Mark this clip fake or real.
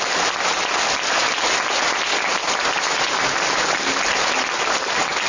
real